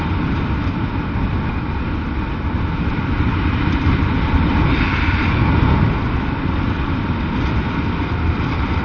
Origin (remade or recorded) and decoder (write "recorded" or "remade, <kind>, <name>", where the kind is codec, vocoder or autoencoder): recorded